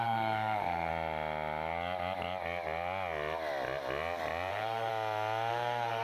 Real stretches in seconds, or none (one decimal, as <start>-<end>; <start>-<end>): 0.9-4.5; 4.9-5.5